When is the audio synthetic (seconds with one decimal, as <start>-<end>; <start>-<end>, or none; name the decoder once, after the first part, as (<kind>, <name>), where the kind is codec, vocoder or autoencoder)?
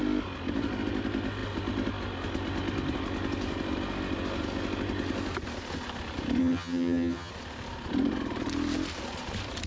6.4-7.3 (vocoder, HiFi-GAN)